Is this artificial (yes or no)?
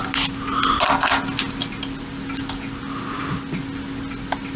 no